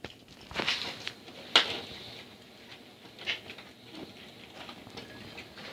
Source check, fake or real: real